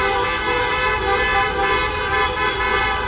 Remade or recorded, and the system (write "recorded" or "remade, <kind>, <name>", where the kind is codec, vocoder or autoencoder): recorded